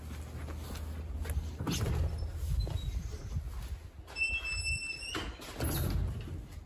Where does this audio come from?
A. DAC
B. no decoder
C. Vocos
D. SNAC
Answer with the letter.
B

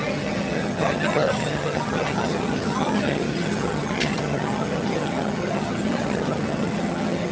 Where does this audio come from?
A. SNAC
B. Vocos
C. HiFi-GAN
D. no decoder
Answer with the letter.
C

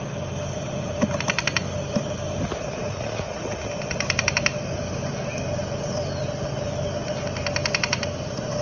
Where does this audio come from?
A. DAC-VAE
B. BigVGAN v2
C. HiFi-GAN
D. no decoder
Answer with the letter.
D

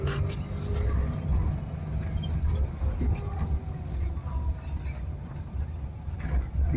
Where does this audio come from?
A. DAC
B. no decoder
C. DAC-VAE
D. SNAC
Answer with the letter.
B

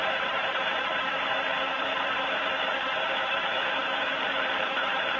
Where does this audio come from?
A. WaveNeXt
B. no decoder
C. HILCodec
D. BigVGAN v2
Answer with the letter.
D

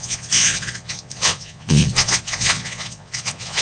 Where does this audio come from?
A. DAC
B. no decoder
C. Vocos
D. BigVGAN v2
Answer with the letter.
C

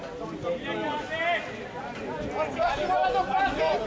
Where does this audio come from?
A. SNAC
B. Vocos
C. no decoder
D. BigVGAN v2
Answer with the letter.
C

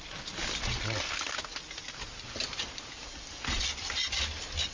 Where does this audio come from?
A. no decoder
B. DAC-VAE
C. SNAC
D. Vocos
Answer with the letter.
A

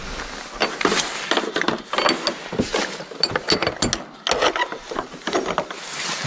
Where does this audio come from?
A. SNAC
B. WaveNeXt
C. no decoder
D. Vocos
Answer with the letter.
C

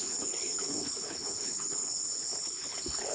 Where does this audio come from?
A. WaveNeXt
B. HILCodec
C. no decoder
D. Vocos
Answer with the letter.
B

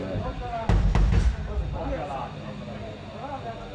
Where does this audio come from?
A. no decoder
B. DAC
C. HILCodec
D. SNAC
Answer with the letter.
A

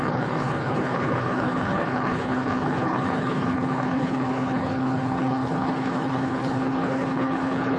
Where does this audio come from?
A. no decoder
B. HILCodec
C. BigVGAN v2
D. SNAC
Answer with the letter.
B